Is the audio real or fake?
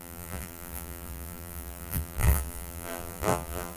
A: fake